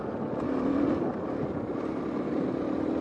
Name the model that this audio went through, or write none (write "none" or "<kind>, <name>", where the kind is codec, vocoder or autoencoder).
none